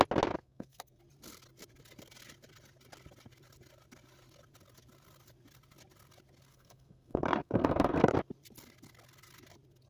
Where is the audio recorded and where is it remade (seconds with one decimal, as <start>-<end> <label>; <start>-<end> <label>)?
0.0-0.4 recorded; 0.4-1.0 remade; 1.0-6.5 recorded; 6.5-8.1 remade; 8.1-9.9 recorded

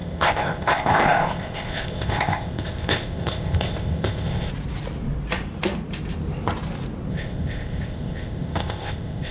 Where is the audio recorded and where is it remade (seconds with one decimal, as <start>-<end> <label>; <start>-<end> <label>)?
0.0-4.5 remade; 4.5-7.1 recorded; 7.1-9.3 remade

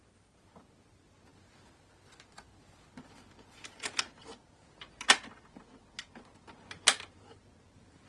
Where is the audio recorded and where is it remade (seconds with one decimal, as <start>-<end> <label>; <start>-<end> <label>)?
0.0-8.1 recorded

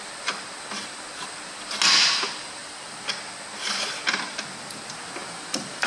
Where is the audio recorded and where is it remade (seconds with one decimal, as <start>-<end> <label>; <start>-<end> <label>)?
0.0-2.6 recorded; 2.6-3.1 remade; 3.1-5.2 recorded; 5.2-5.9 remade

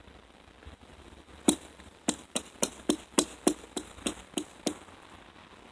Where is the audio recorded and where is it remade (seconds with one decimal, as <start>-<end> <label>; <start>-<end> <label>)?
0.0-0.9 recorded; 0.9-2.7 remade; 2.7-5.7 recorded

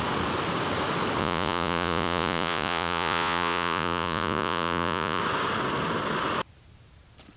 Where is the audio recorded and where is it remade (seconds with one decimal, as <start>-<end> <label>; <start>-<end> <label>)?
0.0-1.2 recorded; 1.2-5.2 remade; 5.2-7.4 recorded

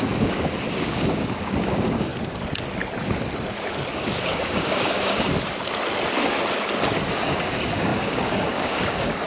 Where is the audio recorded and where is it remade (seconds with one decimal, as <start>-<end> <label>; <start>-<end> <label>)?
0.0-2.1 remade; 2.1-3.9 recorded; 3.9-5.3 remade; 5.3-7.1 recorded; 7.1-9.3 remade